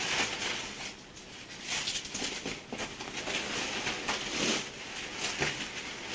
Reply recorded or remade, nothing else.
recorded